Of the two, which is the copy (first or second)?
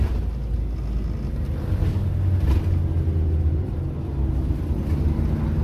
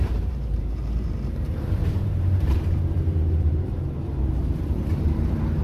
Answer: second